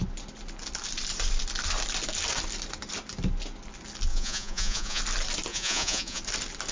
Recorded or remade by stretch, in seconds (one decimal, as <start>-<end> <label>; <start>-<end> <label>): 0.0-4.1 recorded; 4.1-5.0 remade; 5.0-5.5 recorded; 5.5-6.2 remade; 6.2-6.7 recorded